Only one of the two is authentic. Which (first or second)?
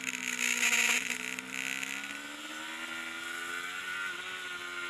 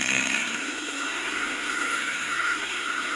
first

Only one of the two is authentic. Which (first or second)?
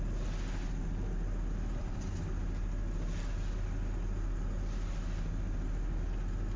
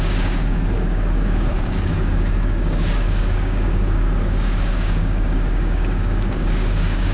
first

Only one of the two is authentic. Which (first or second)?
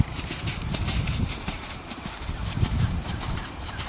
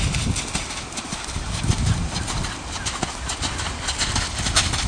second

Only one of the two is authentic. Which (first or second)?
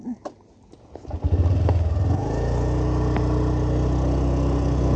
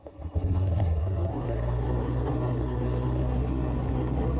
first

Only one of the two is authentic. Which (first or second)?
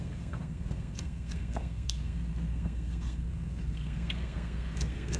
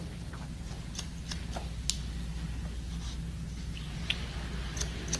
second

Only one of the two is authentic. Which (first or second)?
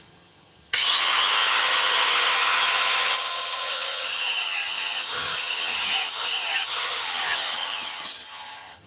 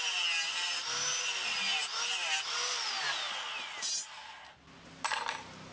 second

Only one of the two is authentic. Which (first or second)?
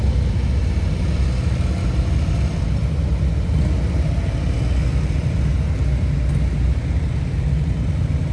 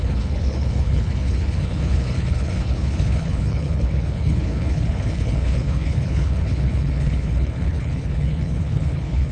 first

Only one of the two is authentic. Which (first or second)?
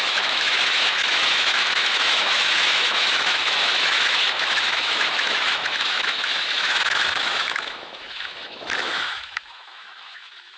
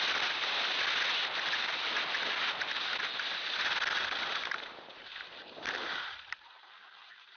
second